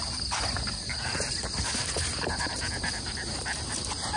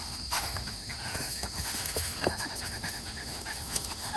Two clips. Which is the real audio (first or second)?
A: first